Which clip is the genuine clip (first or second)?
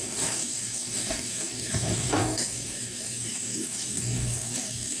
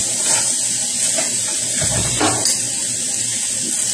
second